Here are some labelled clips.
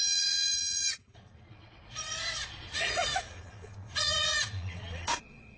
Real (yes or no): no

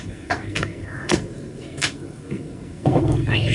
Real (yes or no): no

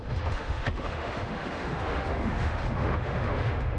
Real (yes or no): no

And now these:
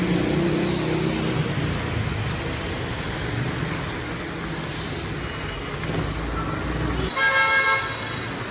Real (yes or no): yes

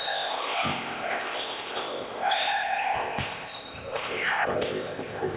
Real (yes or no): no